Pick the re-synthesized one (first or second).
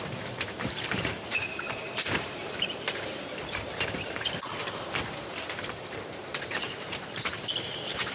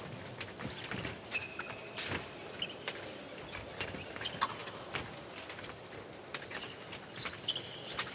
first